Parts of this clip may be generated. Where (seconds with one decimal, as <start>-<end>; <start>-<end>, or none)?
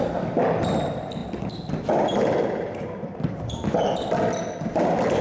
none